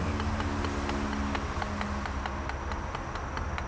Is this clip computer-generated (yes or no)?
no